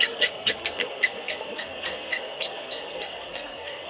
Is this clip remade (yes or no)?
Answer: yes